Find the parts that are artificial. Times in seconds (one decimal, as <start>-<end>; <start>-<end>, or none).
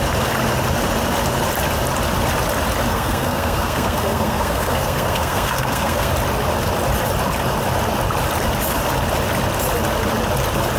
2.9-6.1